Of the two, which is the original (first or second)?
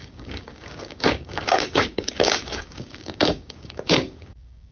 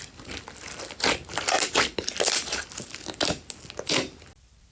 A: second